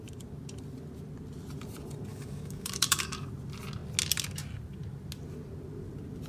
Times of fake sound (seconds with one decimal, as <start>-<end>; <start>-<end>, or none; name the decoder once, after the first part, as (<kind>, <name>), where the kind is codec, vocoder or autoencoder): 2.1-3.3 (codec, DAC)